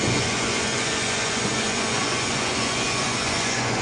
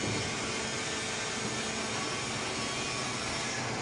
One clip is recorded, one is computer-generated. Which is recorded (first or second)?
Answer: second